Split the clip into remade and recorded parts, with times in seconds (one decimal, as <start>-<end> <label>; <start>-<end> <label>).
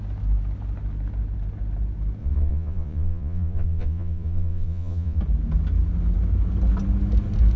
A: 0.0-2.2 recorded; 2.2-5.2 remade; 5.2-7.6 recorded